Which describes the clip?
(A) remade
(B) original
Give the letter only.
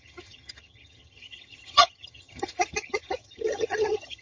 A